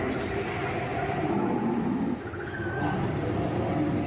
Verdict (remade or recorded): recorded